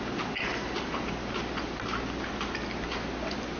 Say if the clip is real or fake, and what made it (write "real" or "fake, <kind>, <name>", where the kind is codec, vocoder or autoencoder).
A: real